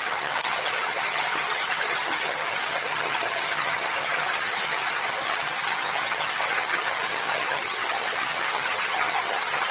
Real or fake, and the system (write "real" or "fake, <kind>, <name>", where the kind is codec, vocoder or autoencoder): fake, vocoder, HiFi-GAN